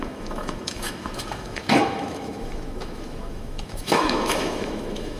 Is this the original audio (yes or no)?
no